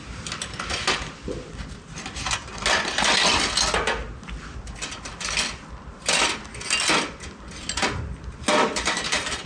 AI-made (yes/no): no